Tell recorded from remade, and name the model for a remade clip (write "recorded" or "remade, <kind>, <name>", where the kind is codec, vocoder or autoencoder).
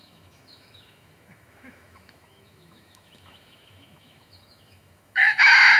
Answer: remade, autoencoder, DAC-VAE